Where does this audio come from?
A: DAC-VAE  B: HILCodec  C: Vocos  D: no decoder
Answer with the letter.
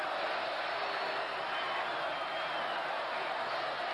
D